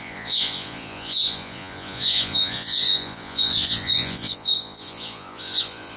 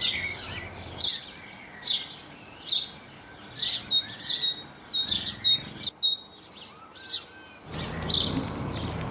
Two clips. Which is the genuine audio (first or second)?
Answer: second